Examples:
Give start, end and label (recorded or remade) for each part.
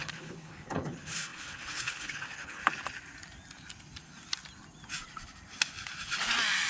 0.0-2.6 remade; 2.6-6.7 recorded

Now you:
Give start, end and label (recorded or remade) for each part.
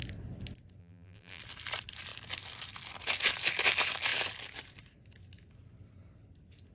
0.0-0.8 recorded; 0.8-1.4 remade; 1.4-6.7 recorded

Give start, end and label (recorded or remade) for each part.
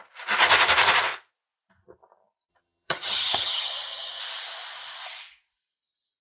0.0-2.5 recorded; 2.5-4.2 remade; 4.2-6.2 recorded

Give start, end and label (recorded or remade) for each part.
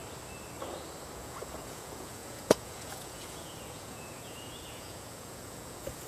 0.0-1.2 recorded; 1.2-6.1 remade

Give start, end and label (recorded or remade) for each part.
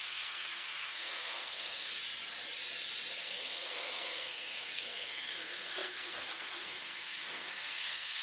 0.0-2.0 remade; 2.0-3.2 recorded; 3.2-8.2 remade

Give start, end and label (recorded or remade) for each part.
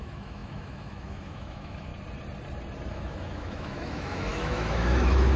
0.0-1.9 remade; 1.9-2.9 recorded; 2.9-5.4 remade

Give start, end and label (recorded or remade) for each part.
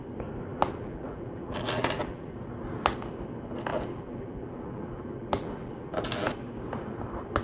0.0-0.5 recorded; 0.5-2.3 remade; 2.3-3.7 recorded; 3.7-6.3 remade; 6.3-7.4 recorded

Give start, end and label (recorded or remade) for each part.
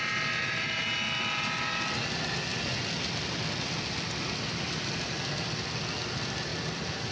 0.0-7.1 recorded